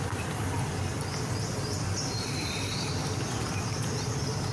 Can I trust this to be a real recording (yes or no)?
no